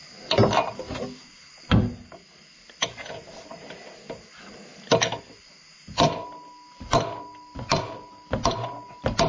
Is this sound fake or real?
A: real